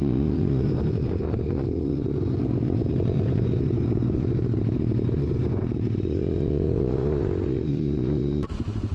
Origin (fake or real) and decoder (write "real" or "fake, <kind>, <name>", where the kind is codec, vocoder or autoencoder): fake, vocoder, Vocos